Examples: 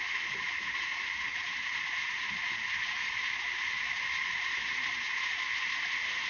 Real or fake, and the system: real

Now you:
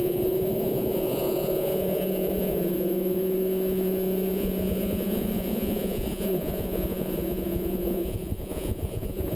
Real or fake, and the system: fake, vocoder, Vocos